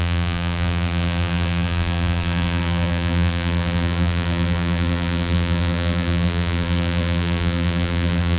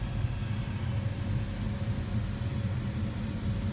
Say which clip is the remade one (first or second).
first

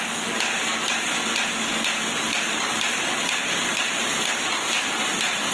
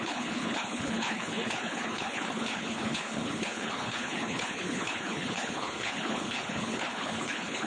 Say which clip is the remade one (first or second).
second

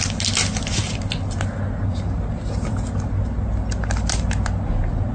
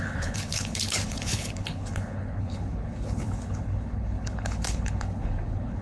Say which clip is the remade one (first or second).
second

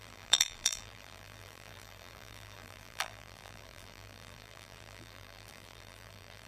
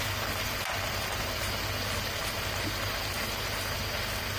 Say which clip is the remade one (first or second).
first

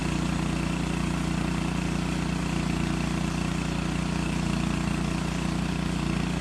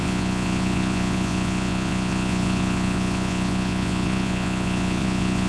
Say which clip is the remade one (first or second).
second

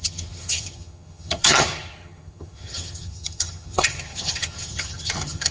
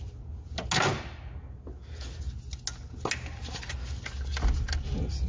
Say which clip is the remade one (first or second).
first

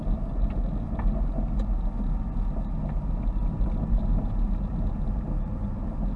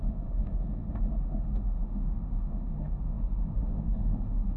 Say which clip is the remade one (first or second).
second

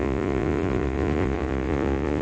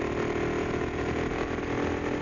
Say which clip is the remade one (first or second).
first